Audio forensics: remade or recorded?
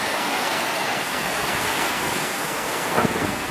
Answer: remade